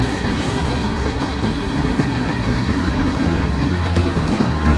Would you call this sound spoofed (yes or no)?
yes